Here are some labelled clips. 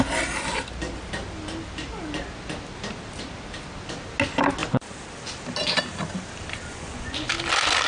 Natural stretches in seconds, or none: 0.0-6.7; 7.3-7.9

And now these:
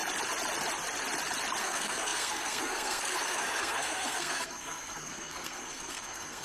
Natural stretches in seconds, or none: 0.0-1.6

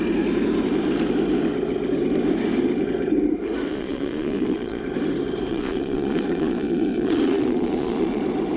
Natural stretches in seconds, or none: 0.0-3.7; 4.8-5.5; 8.2-8.6

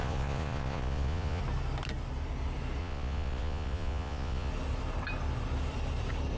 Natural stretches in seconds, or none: 1.4-2.8; 4.5-6.4

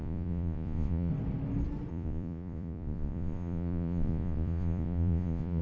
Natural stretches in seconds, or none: 1.1-1.9

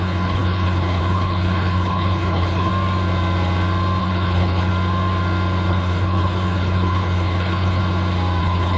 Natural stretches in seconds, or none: 2.7-4.0; 4.7-5.7; 7.8-8.4